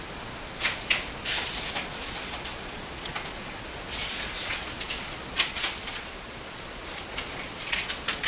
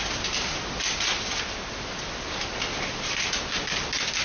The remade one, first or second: first